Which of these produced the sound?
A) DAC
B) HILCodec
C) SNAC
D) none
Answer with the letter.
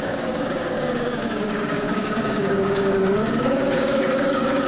A